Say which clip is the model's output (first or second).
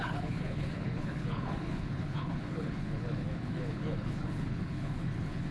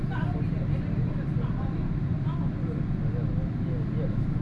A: first